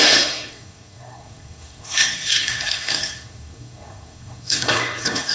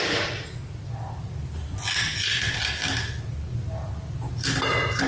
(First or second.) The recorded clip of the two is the second